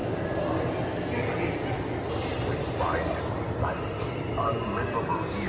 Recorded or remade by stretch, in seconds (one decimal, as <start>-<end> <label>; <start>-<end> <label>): 0.0-5.5 recorded